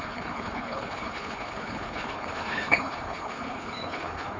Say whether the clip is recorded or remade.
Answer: remade